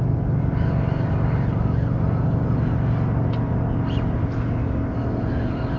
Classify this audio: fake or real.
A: real